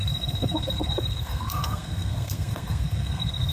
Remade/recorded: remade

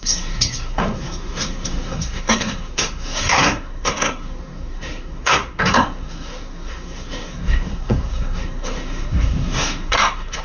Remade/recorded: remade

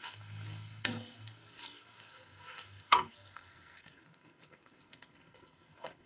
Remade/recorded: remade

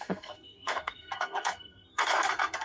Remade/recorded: remade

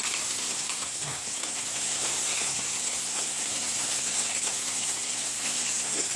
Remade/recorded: remade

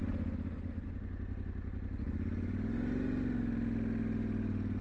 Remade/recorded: recorded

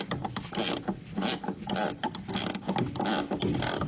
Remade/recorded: recorded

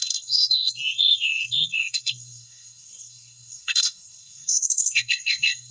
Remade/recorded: remade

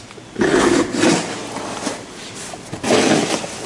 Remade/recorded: recorded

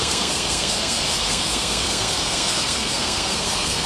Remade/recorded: remade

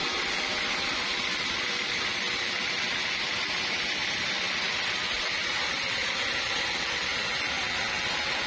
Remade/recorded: recorded